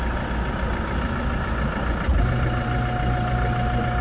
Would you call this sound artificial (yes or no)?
no